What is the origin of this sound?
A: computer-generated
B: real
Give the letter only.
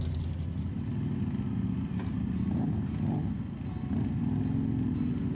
B